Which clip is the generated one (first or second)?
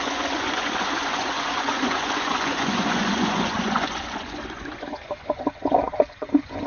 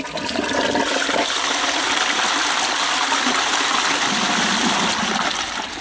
first